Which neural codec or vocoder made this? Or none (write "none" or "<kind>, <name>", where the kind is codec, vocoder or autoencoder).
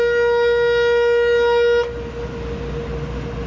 none